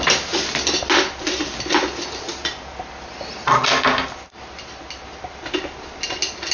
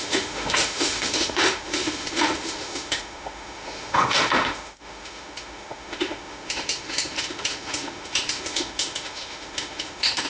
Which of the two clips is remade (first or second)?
second